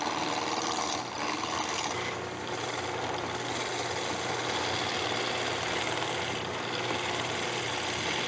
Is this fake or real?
real